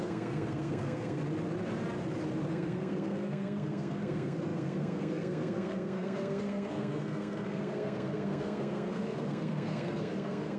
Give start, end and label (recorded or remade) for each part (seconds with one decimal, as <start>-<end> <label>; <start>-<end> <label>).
0.0-1.2 remade; 1.2-2.5 recorded; 2.5-10.6 remade